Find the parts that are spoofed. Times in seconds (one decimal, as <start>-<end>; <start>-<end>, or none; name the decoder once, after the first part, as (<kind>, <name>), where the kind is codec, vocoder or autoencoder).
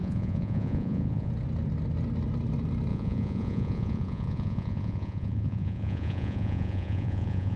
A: 0.0-1.3 (vocoder, Vocos); 2.9-7.6